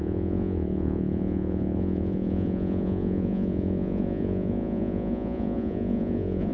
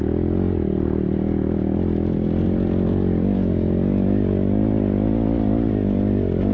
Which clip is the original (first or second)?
second